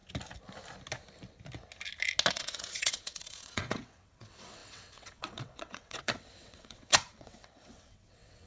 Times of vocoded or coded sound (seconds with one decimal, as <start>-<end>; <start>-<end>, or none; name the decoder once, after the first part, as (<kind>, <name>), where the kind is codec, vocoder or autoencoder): 2.3-8.5 (vocoder, WaveNeXt)